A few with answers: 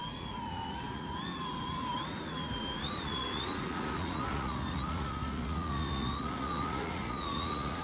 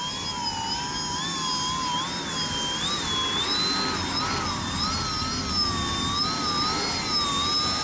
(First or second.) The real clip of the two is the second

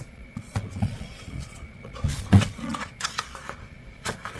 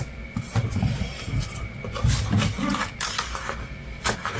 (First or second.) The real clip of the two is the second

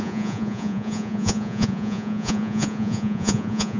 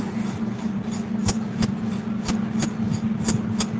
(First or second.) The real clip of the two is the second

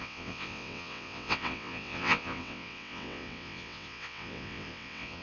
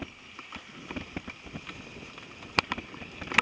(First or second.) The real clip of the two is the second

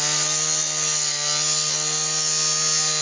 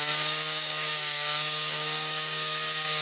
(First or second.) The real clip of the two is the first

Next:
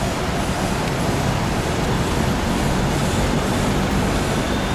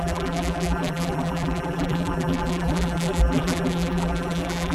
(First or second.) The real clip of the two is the first